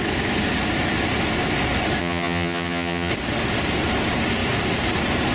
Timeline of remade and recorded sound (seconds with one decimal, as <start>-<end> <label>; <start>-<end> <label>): 0.0-2.0 recorded; 2.0-3.1 remade; 3.1-5.3 recorded